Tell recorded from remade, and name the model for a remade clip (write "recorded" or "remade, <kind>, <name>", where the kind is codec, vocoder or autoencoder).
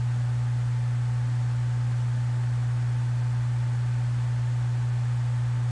recorded